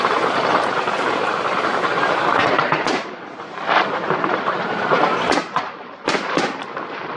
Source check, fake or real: fake